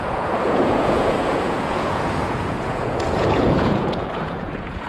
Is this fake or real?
fake